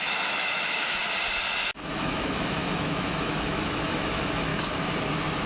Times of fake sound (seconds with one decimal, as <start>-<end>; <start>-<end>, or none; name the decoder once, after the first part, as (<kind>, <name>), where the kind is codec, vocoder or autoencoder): 0.0-1.0 (autoencoder, DAC-VAE); 2.0-4.5